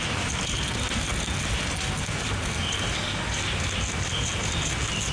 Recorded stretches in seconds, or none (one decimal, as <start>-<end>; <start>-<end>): 0.0-5.1

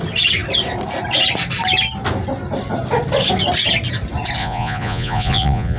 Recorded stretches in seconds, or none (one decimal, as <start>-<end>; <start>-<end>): 0.0-4.4

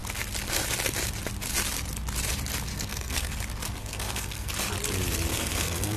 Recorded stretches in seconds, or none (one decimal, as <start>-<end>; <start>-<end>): 0.0-2.7; 3.4-3.8; 4.5-5.3

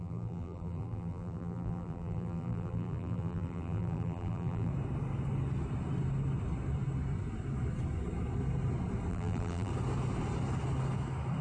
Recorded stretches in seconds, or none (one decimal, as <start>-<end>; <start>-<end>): 4.7-9.1; 9.7-11.4

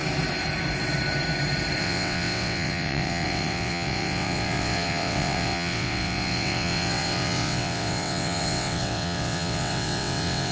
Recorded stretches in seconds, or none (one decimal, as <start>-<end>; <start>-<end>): 0.0-1.8

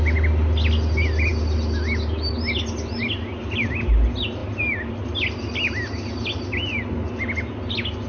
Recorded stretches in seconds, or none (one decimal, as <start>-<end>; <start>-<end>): 0.0-8.1

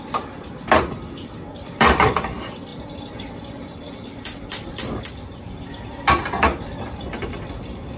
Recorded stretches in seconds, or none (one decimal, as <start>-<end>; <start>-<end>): 0.0-8.0

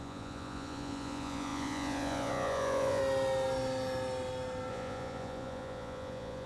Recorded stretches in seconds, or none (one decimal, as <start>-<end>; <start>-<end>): 3.0-4.7